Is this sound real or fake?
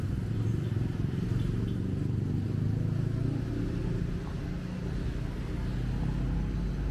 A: real